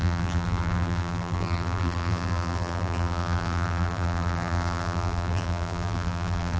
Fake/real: fake